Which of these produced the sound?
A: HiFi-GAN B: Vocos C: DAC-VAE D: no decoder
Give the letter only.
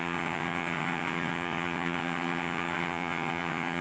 A